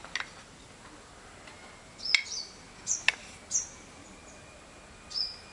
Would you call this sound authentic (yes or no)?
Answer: yes